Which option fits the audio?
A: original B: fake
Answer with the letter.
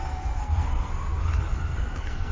B